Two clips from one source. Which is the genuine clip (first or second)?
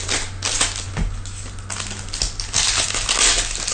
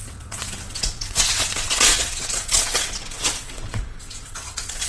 first